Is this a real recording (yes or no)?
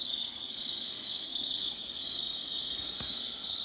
no